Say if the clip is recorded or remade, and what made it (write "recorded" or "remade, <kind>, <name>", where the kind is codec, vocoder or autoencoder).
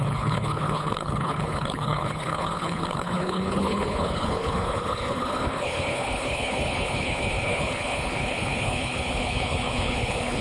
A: remade, codec, HILCodec